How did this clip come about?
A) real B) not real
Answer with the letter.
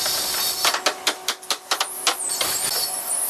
A